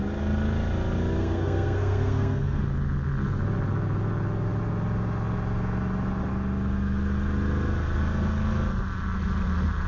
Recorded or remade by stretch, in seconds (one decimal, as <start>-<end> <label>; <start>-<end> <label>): 0.0-1.2 recorded; 1.2-2.6 remade; 2.6-9.9 recorded